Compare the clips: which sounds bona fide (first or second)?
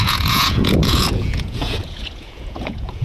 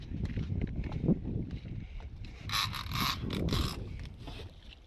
second